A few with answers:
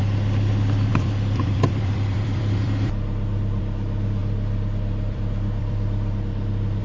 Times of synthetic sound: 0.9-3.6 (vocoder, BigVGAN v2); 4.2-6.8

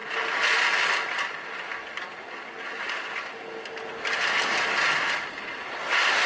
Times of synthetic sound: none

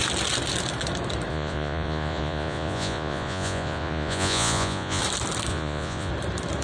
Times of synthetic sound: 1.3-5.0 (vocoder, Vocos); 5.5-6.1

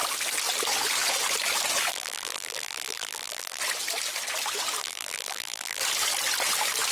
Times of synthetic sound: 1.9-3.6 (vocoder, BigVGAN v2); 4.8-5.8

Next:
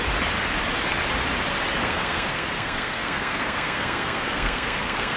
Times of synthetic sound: 1.8-5.2 (codec, SNAC)

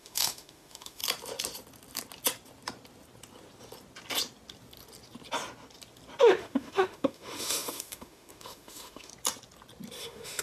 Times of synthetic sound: 0.0-1.0 (autoencoder, DAC-VAE); 6.2-9.1; 10.0-10.4

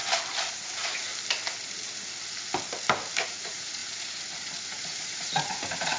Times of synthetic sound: 0.5-1.1 (vocoder, Vocos); 3.2-6.0